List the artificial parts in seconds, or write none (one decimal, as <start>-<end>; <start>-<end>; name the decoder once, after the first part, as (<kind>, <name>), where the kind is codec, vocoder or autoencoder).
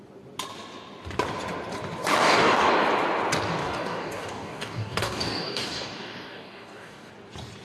2.2-2.7 (codec, DAC); 3.6-7.1